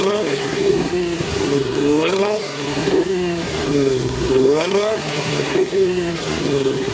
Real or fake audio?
fake